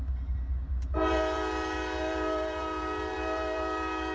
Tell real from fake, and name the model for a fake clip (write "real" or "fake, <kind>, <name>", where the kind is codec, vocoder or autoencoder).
fake, vocoder, BigVGAN v2